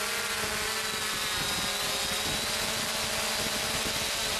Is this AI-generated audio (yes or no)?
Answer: no